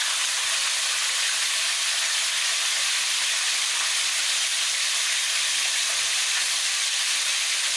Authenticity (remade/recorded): remade